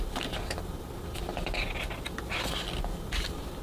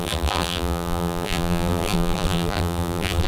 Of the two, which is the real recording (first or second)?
first